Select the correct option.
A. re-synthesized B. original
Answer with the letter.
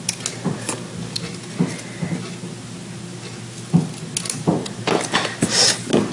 B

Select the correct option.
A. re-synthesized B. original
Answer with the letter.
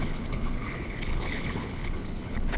A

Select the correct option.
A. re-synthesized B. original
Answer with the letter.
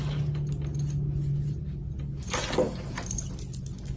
B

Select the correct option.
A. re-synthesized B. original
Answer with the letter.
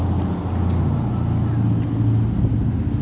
B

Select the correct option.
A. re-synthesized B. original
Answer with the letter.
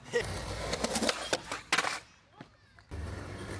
B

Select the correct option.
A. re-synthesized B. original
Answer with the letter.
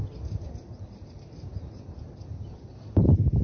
B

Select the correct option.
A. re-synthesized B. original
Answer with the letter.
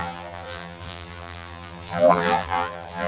A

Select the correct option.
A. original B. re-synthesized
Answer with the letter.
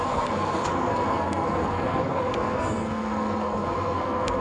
B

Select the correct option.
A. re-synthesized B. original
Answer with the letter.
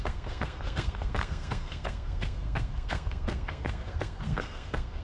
A